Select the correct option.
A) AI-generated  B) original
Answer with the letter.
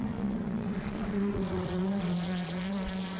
A